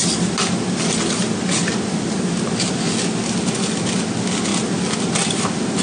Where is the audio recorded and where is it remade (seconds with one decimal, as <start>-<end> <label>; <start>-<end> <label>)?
0.0-5.8 recorded